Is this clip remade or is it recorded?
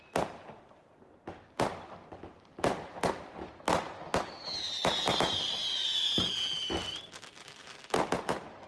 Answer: recorded